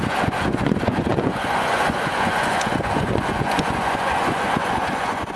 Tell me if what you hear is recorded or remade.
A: remade